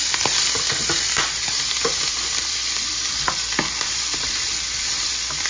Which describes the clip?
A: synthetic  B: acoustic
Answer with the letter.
A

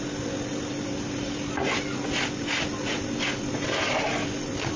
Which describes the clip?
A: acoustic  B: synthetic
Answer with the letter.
A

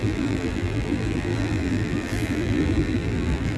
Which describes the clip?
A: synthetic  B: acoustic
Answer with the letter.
A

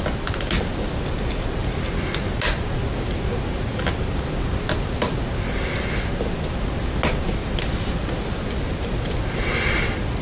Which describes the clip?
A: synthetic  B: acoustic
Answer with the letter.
B